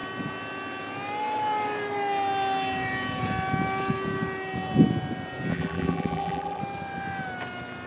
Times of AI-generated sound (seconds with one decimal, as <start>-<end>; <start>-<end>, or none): 5.5-6.6